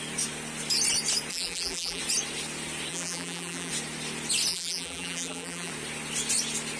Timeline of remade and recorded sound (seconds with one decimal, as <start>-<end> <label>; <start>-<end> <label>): 0.0-1.3 recorded; 1.3-2.0 remade; 2.0-2.9 recorded; 2.9-3.7 remade; 3.7-4.5 recorded; 4.5-5.7 remade; 5.7-6.8 recorded